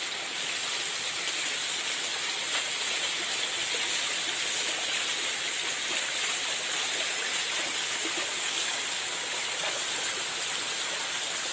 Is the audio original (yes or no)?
yes